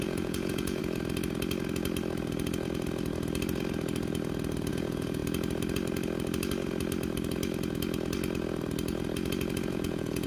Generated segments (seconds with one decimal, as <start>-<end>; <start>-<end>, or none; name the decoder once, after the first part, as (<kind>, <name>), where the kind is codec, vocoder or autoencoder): 0.0-0.8 (vocoder, Vocos); 4.7-5.2; 9.7-10.3